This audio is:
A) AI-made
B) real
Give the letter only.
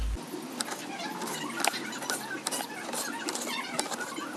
B